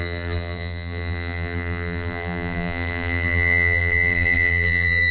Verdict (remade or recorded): remade